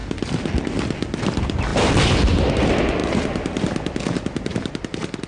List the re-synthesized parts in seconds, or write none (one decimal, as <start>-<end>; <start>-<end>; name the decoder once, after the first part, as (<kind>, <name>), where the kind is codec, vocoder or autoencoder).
none